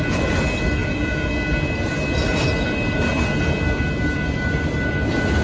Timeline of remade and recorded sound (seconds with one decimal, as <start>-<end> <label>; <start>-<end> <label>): 0.0-0.8 recorded; 0.8-1.3 remade; 1.3-5.4 recorded